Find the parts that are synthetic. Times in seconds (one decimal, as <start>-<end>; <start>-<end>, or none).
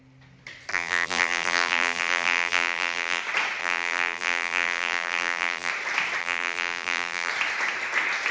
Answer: 0.7-3.2; 3.6-5.7; 6.2-7.3